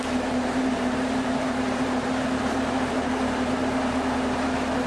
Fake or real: fake